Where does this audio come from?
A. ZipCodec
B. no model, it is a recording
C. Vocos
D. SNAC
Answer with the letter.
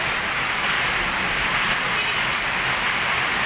B